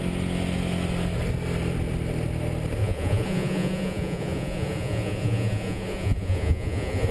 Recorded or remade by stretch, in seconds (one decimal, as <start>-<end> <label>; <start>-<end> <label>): 0.0-2.8 recorded; 2.8-7.1 remade